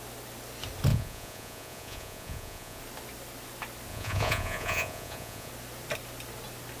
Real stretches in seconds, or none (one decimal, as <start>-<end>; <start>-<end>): 0.0-0.9; 2.8-3.9; 5.5-6.8